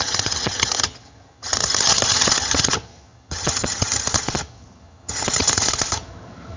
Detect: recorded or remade remade